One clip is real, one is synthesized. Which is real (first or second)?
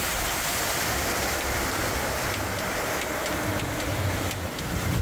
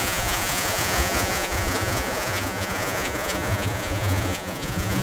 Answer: first